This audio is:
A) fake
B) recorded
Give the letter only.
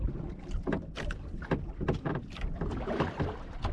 A